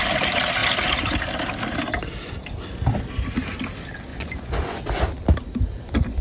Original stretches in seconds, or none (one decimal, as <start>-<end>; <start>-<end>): 0.0-4.1; 4.8-6.2